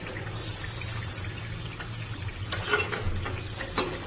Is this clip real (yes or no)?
yes